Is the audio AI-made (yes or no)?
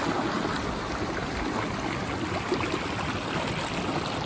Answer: no